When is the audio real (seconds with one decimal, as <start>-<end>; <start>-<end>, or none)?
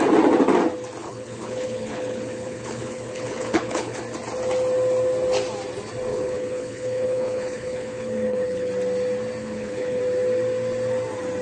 0.0-1.0; 4.0-6.1; 8.7-9.4; 10.0-11.4